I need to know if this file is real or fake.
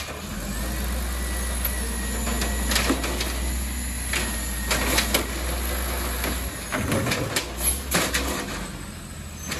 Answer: real